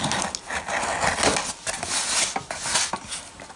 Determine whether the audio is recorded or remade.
recorded